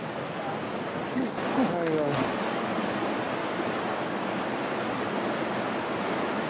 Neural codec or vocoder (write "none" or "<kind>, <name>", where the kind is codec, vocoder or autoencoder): none